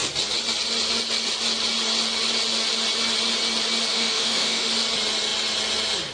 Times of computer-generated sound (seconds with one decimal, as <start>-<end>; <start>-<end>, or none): 3.9-4.7